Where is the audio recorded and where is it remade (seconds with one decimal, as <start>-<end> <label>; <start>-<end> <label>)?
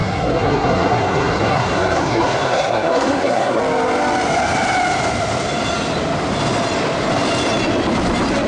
0.0-3.6 remade; 3.6-8.5 recorded